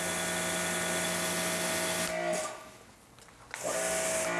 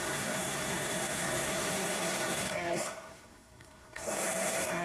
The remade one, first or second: second